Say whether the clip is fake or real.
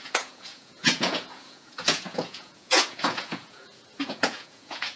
fake